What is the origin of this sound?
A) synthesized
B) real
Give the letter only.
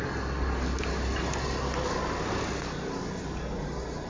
B